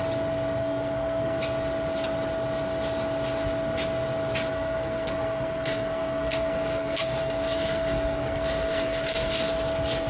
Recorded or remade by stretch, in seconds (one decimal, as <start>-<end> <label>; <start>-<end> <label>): 0.0-0.6 recorded; 0.6-1.4 remade; 1.4-4.5 recorded; 4.5-9.5 remade; 9.5-10.1 recorded